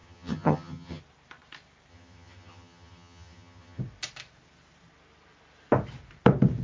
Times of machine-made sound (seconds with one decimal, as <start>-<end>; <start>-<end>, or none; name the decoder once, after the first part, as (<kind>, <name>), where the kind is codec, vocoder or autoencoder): 0.0-1.0 (vocoder, HiFi-GAN); 1.9-3.8